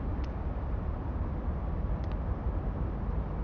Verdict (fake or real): real